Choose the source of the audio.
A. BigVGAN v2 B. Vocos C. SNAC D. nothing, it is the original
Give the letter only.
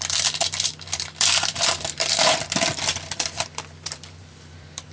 A